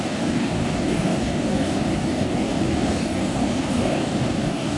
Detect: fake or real fake